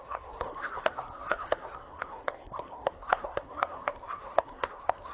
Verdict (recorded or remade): remade